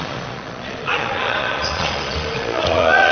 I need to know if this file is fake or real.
fake